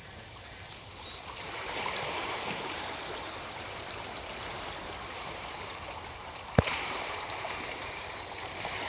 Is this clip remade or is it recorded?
remade